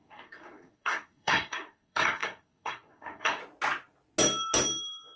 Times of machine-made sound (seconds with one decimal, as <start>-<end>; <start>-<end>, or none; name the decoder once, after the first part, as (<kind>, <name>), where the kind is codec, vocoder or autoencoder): 0.0-3.4 (codec, SNAC)